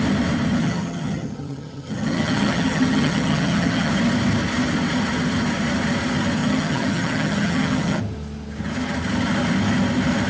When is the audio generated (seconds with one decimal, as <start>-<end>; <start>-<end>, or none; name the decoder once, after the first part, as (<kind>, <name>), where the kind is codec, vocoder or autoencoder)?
0.6-3.9 (vocoder, HiFi-GAN); 6.4-8.0